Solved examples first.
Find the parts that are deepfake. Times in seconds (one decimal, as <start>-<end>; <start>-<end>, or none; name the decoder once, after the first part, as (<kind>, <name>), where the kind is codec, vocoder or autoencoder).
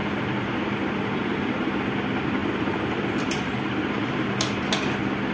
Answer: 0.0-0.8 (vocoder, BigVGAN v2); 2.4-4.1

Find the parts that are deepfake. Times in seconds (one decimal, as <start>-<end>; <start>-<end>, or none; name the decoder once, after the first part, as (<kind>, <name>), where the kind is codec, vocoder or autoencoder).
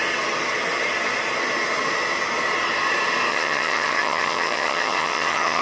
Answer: 3.3-5.6 (vocoder, HiFi-GAN)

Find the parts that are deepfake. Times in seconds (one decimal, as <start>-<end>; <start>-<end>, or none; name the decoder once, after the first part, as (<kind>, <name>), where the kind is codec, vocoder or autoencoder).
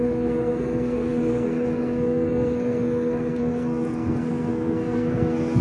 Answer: 0.0-5.6 (codec, SNAC)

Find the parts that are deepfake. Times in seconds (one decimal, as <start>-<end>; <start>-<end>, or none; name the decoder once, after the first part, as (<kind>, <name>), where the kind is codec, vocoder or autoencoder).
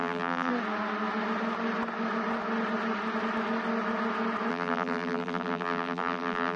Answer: 0.0-0.5 (vocoder, BigVGAN v2); 4.5-6.6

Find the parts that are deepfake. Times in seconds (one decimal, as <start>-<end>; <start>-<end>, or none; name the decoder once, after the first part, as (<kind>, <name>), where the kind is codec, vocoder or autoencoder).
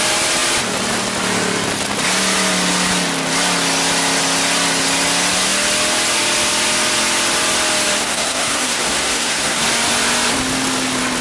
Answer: 8.0-9.6 (codec, SNAC)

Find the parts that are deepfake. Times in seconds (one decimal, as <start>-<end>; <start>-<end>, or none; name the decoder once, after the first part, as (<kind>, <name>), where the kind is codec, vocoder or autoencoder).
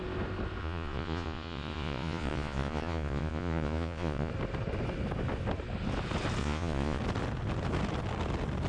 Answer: 0.6-4.3 (vocoder, Vocos); 6.4-7.0